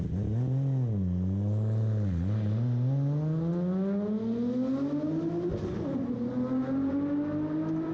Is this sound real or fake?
real